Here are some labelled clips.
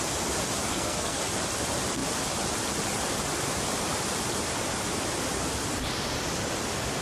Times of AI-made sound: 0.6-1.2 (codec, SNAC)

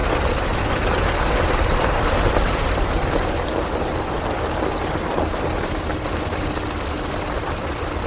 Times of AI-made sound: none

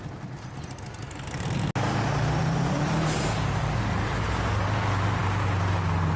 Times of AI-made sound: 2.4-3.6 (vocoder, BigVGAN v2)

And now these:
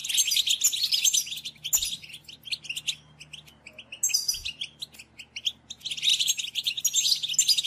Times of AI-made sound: 4.2-4.8 (vocoder, BigVGAN v2); 6.1-6.8

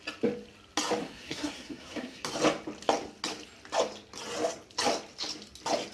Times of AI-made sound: 1.0-2.2 (codec, SNAC)

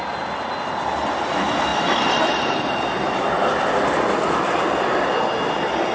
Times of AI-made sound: none

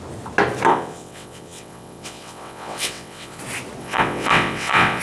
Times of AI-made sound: 0.7-3.4 (vocoder, WaveNeXt); 3.8-5.0

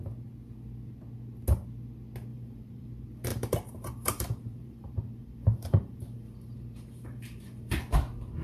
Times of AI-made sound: 2.3-2.9 (vocoder, BigVGAN v2); 3.3-7.8